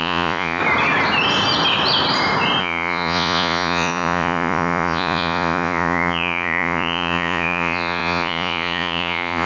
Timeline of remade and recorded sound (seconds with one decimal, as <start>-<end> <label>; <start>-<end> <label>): 0.0-0.6 remade; 0.6-2.6 recorded; 2.6-9.5 remade